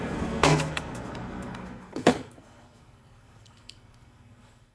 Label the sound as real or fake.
fake